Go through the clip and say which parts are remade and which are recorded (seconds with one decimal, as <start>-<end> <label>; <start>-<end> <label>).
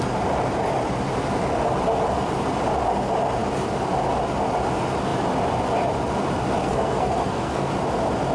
0.0-6.6 recorded; 6.6-7.7 remade; 7.7-8.3 recorded